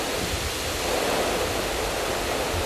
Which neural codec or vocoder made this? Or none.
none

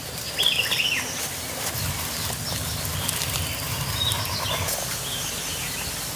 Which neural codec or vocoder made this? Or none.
none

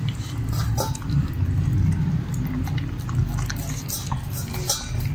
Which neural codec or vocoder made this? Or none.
none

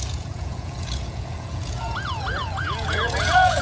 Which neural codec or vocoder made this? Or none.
vocoder, Vocos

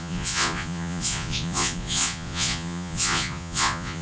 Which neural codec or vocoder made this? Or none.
vocoder, Vocos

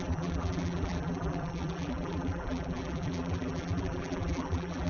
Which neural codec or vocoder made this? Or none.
vocoder, BigVGAN v2